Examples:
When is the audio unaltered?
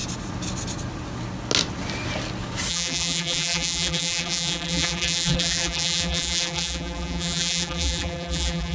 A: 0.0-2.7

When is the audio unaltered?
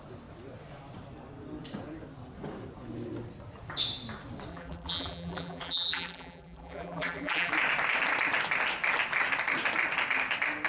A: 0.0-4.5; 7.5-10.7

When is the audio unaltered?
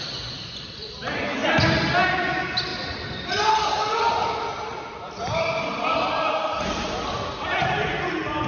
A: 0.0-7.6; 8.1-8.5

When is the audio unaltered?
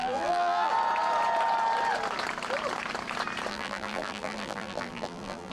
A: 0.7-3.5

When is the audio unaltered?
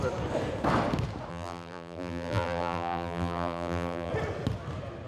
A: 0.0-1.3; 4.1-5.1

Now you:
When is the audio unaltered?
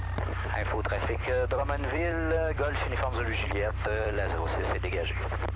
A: 0.0-1.0; 2.7-3.7; 4.9-5.6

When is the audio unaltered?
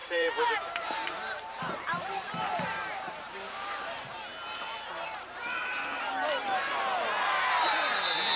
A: 3.3-8.4